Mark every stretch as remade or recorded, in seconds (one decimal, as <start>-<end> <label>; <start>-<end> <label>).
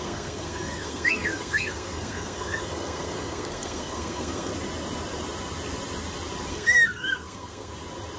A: 0.0-4.5 remade; 4.5-6.5 recorded; 6.5-7.7 remade; 7.7-8.2 recorded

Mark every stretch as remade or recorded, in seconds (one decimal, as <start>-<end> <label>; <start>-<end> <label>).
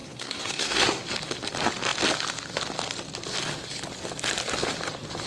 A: 0.0-1.0 remade; 1.0-5.3 recorded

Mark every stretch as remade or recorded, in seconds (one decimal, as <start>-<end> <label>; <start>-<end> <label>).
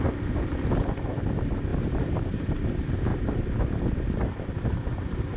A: 0.0-5.4 recorded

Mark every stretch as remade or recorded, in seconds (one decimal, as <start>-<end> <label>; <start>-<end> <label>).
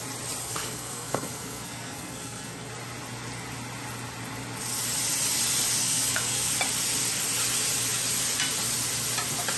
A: 0.0-0.4 recorded; 0.4-2.7 remade; 2.7-5.8 recorded; 5.8-6.5 remade; 6.5-9.6 recorded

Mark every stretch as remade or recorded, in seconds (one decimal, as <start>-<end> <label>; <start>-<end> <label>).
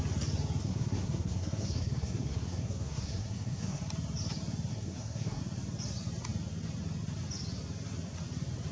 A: 0.0-0.6 recorded; 0.6-3.8 remade; 3.8-4.7 recorded; 4.7-5.4 remade; 5.4-8.7 recorded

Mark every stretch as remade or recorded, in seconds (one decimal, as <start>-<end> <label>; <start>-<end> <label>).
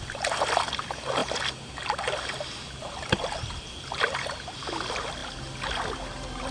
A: 0.0-6.5 recorded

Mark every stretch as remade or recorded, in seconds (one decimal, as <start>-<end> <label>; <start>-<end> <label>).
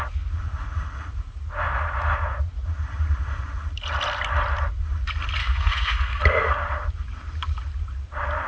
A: 0.0-5.4 recorded; 5.4-6.2 remade; 6.2-8.5 recorded